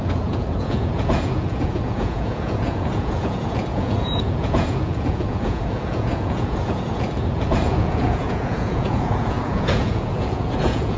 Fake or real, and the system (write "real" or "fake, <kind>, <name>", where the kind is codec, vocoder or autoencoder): fake, vocoder, Vocos